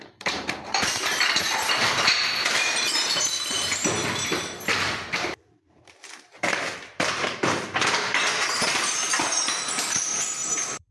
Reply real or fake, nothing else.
fake